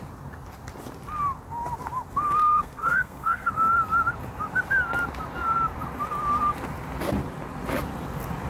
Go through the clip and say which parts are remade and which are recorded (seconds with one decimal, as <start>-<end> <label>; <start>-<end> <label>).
0.0-2.4 recorded; 2.4-3.5 remade; 3.5-8.5 recorded